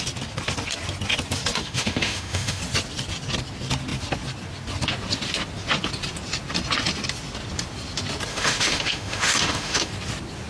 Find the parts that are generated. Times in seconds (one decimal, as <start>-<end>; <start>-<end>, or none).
1.6-2.6; 8.3-9.9